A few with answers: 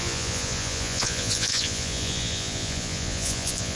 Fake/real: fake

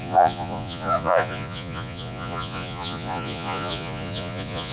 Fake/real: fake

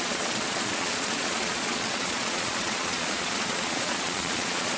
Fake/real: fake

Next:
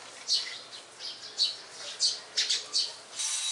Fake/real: real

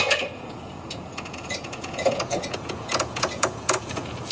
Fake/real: fake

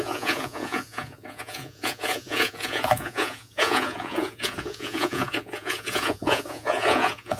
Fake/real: fake